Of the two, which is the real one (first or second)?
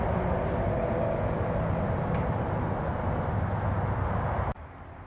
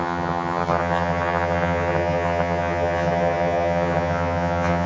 first